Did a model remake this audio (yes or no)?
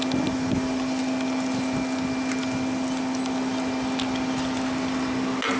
no